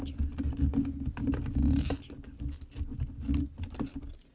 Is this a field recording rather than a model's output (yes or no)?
yes